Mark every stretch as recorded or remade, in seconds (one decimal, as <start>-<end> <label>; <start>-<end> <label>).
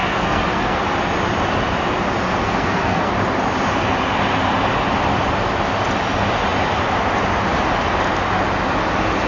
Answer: 0.0-0.8 remade; 0.8-2.4 recorded; 2.4-3.1 remade; 3.1-9.3 recorded